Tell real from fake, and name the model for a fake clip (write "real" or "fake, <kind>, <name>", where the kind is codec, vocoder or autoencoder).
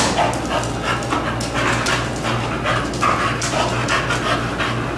real